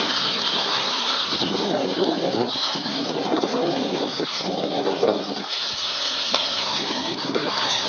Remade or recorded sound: remade